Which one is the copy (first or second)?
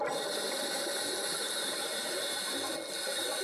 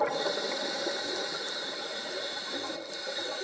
second